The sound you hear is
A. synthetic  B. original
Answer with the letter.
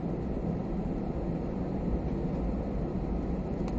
B